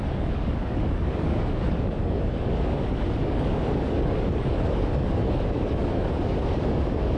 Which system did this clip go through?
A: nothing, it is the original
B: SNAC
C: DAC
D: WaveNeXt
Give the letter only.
C